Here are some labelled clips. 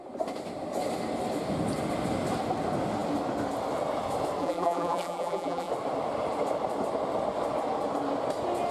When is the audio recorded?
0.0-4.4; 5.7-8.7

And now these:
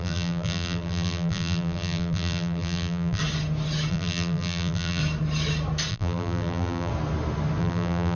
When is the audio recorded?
3.2-3.9; 5.0-5.9; 6.9-7.6